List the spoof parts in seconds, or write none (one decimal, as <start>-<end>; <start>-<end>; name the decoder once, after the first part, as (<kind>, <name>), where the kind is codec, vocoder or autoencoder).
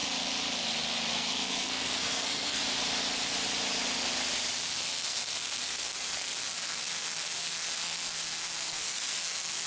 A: 1.1-2.6 (codec, SNAC); 4.7-9.7